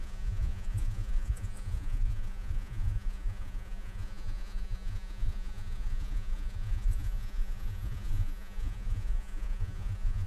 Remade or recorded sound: remade